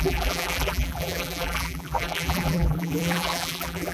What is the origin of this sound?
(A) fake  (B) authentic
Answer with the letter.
A